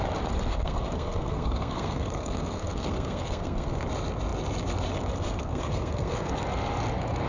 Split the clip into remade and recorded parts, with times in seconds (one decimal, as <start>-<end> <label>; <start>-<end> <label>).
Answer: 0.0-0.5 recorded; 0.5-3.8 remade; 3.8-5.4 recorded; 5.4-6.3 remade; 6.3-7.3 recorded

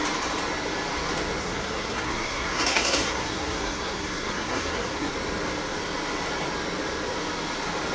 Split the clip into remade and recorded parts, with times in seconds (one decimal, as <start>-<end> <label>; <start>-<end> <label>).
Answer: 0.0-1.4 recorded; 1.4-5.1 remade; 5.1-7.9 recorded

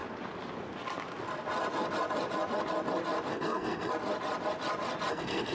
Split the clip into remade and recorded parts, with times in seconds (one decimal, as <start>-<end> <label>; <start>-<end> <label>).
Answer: 0.0-3.3 recorded; 3.3-3.9 remade; 3.9-5.1 recorded; 5.1-5.5 remade

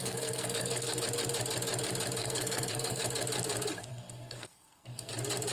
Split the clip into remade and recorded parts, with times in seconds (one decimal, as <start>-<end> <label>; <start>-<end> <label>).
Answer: 0.0-1.0 remade; 1.0-2.2 recorded; 2.2-3.0 remade; 3.0-3.9 recorded; 3.9-5.1 remade; 5.1-5.5 recorded